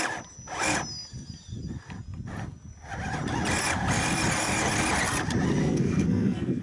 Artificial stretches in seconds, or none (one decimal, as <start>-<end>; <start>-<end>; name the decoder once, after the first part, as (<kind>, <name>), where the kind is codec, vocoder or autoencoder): 5.6-6.6 (codec, SNAC)